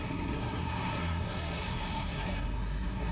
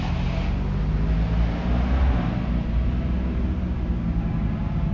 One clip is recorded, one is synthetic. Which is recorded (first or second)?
second